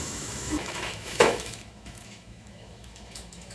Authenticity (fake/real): fake